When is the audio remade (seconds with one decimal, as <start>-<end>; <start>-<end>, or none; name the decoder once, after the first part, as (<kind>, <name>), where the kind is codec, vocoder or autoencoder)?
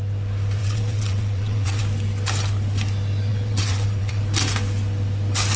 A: 0.6-1.8 (vocoder, WaveNeXt); 3.3-4.2